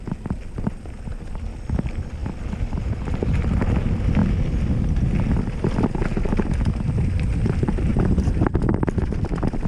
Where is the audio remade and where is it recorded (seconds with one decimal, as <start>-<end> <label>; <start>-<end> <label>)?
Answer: 0.0-4.2 remade; 4.2-5.4 recorded; 5.4-6.1 remade; 6.1-6.9 recorded; 6.9-9.7 remade

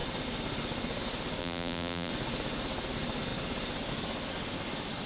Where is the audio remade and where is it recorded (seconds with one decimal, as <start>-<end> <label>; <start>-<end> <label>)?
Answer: 0.0-1.4 recorded; 1.4-2.1 remade; 2.1-5.1 recorded

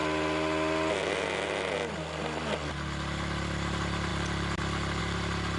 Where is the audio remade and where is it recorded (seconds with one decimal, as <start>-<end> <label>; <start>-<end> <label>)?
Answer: 0.0-2.7 recorded; 2.7-4.1 remade; 4.1-5.0 recorded; 5.0-5.6 remade

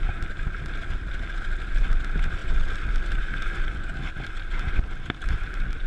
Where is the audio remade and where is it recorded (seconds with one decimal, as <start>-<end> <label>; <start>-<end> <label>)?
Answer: 0.0-5.9 recorded

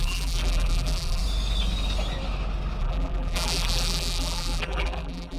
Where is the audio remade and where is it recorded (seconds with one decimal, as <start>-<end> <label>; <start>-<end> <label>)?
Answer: 0.0-1.2 remade; 1.2-2.8 recorded; 2.8-5.4 remade